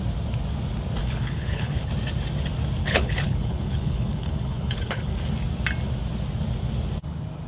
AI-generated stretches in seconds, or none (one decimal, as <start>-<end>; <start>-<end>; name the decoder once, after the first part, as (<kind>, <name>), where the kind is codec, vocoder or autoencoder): 1.0-1.9 (codec, HILCodec); 2.8-5.1